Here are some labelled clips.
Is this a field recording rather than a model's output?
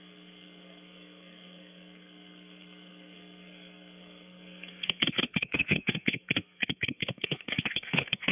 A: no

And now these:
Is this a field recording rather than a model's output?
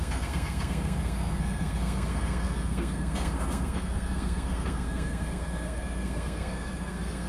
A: no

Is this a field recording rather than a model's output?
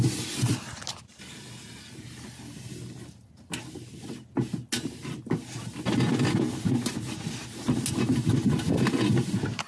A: yes